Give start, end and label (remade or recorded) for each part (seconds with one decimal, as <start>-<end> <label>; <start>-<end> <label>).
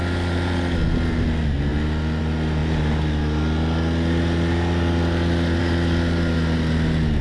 0.0-7.2 recorded